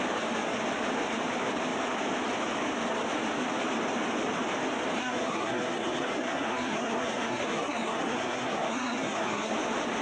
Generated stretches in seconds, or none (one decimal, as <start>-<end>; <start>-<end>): 5.0-9.5